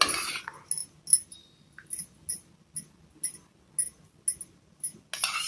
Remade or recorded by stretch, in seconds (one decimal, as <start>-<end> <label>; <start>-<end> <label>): 0.0-5.5 recorded